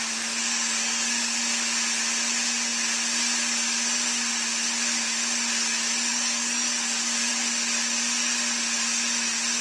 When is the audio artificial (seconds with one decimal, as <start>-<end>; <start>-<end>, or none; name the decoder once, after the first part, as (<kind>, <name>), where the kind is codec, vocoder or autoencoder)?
0.4-1.4 (codec, DAC); 6.1-7.3

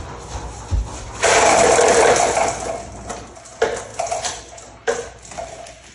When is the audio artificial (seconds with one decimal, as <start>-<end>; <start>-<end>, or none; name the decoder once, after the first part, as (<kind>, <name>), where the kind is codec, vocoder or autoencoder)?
none

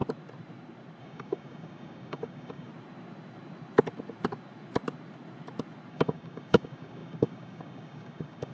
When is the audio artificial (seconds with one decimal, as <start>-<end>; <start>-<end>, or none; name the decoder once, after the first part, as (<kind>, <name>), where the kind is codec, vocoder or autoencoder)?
1.0-2.7 (codec, DAC); 5.9-8.5

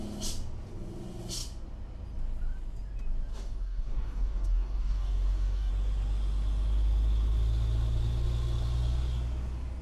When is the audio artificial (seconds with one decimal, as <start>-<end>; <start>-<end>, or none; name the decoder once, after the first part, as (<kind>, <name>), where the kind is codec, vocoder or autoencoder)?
3.3-5.7 (codec, DAC)

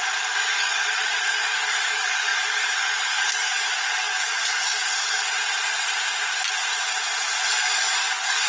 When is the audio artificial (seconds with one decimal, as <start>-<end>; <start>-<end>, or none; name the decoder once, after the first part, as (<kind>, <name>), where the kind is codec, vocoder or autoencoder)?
0.5-4.9 (codec, DAC); 7.5-8.5

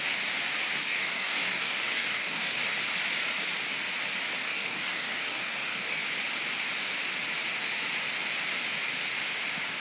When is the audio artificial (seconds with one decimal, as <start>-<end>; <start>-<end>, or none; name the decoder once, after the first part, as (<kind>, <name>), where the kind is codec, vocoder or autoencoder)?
0.8-2.6 (codec, DAC); 4.4-6.0